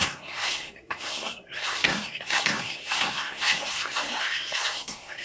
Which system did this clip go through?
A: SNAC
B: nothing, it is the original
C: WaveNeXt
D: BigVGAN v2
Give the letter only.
A